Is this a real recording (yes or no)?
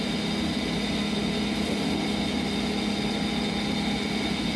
yes